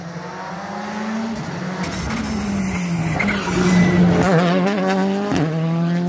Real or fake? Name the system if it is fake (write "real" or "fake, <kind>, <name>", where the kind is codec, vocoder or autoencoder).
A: real